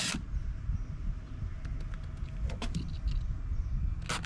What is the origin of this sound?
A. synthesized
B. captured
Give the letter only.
B